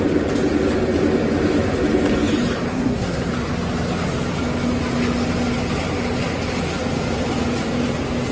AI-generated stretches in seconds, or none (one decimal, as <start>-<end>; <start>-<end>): 2.7-3.3